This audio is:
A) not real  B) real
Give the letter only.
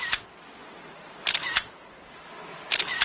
B